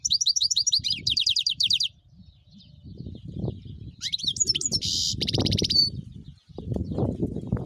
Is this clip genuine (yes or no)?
no